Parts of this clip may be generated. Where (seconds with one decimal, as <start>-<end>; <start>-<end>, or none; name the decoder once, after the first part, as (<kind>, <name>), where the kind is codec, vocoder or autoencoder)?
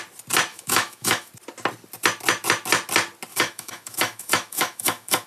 0.5-1.3 (autoencoder, DAC-VAE); 3.3-5.3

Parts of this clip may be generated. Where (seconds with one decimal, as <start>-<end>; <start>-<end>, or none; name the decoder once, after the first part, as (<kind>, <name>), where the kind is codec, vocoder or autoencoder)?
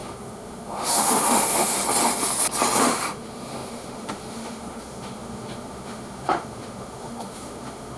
0.0-1.8 (autoencoder, DAC-VAE); 2.8-8.0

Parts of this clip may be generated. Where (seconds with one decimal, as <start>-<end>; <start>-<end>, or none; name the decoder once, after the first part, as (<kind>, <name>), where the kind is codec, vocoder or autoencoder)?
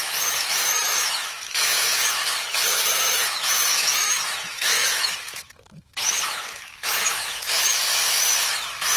0.0-9.0 (autoencoder, DAC-VAE)